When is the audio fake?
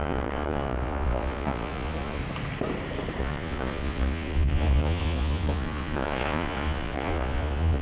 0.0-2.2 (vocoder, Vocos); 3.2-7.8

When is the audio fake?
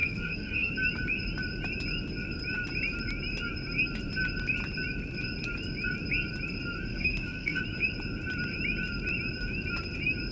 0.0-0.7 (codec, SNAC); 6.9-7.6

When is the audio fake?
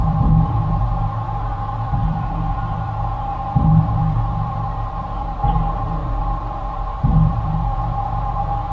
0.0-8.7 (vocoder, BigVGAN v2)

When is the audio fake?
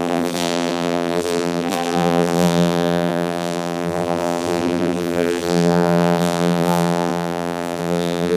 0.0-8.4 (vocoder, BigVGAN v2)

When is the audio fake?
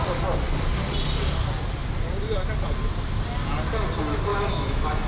4.3-5.1 (autoencoder, DAC-VAE)